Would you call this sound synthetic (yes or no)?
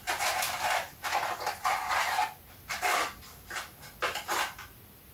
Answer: no